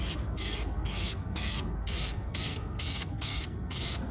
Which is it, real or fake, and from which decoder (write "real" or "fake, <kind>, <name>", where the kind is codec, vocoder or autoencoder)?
fake, codec, SNAC